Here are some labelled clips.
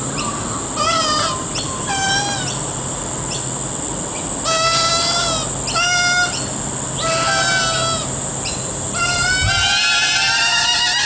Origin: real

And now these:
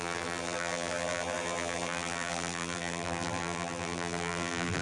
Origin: fake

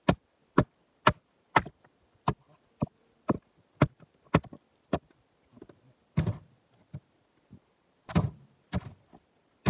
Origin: real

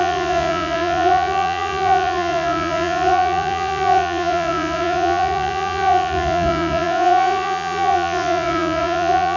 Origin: fake